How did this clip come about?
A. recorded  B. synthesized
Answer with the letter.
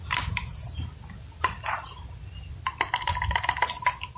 A